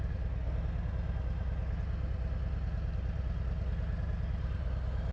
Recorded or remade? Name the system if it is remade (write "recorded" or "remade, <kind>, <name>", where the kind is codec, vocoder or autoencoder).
recorded